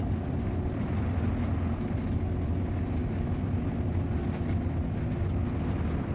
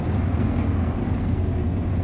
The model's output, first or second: second